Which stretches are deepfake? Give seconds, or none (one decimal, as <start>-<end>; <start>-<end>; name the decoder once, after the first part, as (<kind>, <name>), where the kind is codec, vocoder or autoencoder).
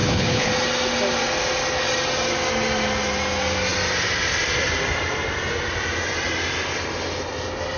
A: 0.0-0.5 (codec, HILCodec)